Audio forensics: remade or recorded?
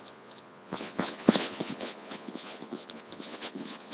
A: remade